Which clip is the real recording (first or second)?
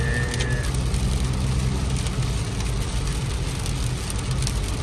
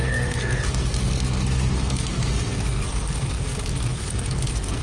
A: first